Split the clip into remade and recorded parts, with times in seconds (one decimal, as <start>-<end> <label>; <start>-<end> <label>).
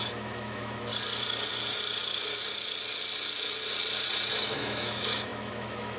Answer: 0.0-0.9 remade; 0.9-4.3 recorded; 4.3-6.0 remade